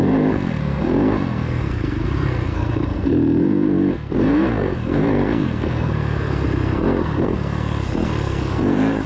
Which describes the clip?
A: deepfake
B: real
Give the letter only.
A